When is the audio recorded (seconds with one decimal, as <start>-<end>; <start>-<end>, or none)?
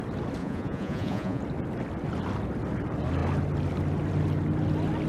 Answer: 0.0-0.4; 1.4-5.1